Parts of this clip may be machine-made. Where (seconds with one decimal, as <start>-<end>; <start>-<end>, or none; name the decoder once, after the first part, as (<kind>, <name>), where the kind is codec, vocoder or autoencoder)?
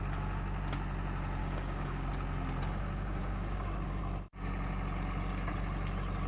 1.4-2.1 (codec, DAC); 3.2-4.0